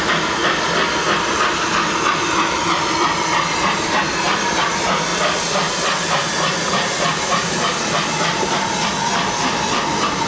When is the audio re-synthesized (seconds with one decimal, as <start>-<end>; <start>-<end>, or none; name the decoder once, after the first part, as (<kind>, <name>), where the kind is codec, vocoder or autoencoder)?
0.0-0.4 (vocoder, BigVGAN v2); 3.6-5.1; 6.0-8.7